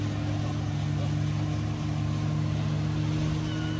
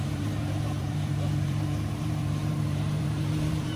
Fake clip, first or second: second